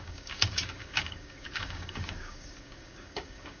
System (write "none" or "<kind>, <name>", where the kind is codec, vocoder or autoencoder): codec, DAC